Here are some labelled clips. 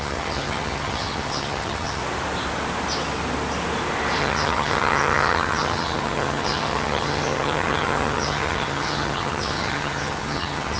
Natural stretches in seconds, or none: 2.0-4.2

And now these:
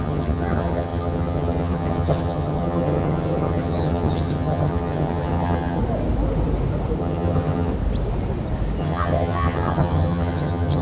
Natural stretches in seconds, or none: 5.8-7.0; 7.7-8.8

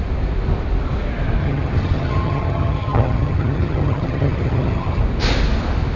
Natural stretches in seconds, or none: 0.0-1.4; 5.0-6.0

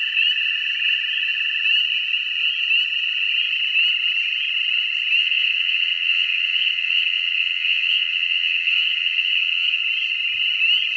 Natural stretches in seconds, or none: 0.0-5.2; 9.8-11.0